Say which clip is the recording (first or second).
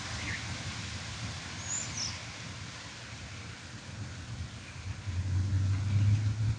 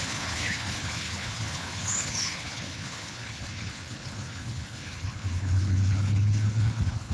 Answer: first